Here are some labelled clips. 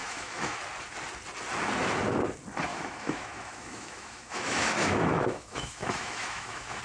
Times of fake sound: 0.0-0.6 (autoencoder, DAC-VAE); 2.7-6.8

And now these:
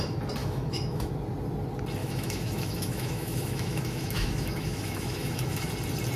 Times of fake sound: 0.4-1.1 (autoencoder, DAC-VAE); 2.0-5.7

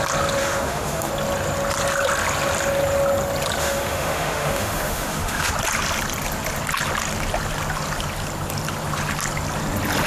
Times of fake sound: 0.4-1.1 (autoencoder, DAC-VAE); 3.6-5.5